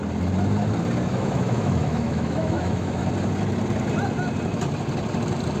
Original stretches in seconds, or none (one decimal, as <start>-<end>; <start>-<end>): 0.0-1.1; 3.0-5.6